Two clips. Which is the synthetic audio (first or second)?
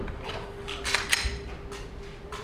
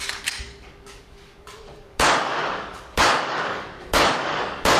second